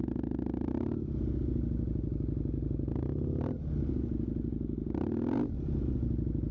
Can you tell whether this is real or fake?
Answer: real